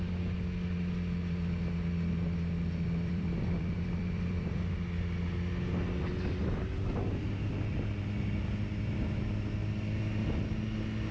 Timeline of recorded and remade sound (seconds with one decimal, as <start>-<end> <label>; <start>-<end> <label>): 0.0-3.1 recorded; 3.1-4.7 remade; 4.7-11.1 recorded